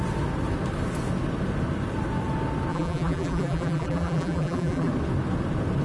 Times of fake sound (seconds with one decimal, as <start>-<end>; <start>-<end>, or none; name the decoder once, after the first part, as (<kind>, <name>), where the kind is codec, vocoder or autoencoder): 2.7-4.9 (vocoder, BigVGAN v2)